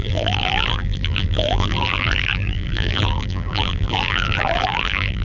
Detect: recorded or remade remade